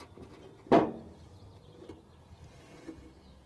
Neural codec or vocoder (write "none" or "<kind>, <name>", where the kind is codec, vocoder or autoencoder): none